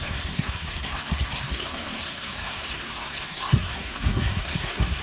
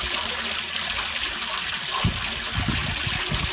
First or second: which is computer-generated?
first